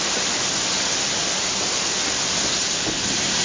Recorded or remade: recorded